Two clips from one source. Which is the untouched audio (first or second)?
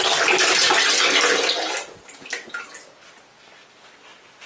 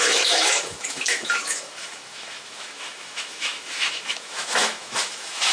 first